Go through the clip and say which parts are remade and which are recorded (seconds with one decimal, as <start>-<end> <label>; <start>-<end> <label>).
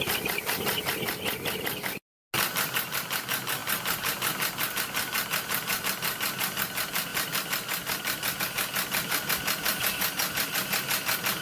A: 0.0-11.4 recorded